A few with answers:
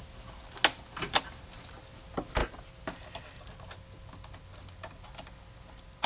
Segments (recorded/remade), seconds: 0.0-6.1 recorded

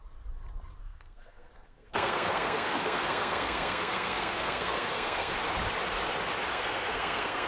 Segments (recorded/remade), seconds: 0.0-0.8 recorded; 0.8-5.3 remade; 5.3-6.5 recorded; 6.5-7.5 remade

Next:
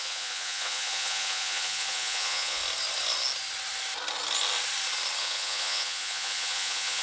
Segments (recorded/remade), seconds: 0.0-2.6 remade; 2.6-5.2 recorded; 5.2-7.0 remade